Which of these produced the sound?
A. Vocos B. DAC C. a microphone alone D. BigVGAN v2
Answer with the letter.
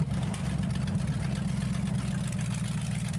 C